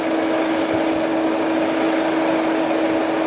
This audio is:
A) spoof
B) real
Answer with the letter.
B